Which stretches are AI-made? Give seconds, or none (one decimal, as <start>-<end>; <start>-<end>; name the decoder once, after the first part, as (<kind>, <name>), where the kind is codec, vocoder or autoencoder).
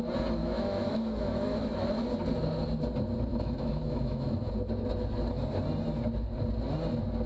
0.4-1.9 (autoencoder, DAC-VAE); 3.3-4.5